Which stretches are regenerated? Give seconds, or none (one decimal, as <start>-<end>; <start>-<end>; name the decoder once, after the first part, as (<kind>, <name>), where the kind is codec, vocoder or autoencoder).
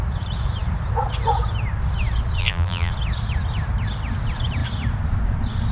2.4-2.9 (vocoder, BigVGAN v2)